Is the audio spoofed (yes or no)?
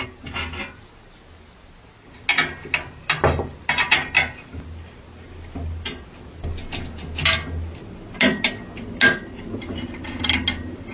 no